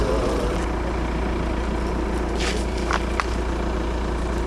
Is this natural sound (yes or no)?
yes